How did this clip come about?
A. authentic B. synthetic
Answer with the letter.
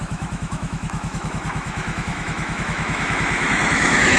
B